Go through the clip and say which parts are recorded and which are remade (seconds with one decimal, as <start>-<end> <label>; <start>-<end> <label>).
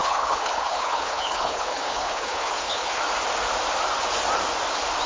0.0-3.0 remade; 3.0-5.1 recorded